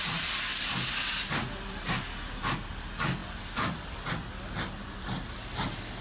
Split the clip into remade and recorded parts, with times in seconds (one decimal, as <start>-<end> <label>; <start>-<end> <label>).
0.0-6.0 recorded